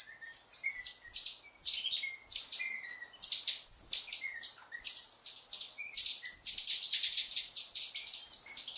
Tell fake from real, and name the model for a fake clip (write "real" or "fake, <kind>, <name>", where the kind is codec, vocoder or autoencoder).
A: real